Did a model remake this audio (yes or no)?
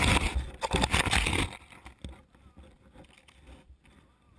no